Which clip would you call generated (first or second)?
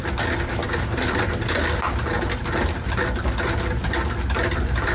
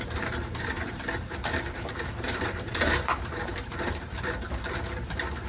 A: second